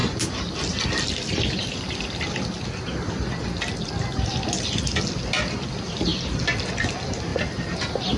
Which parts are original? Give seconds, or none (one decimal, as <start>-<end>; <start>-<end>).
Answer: 0.0-8.2